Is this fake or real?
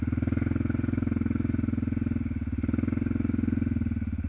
real